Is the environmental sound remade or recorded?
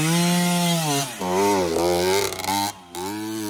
recorded